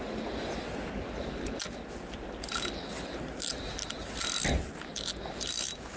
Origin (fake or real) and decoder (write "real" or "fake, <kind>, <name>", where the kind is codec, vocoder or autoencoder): real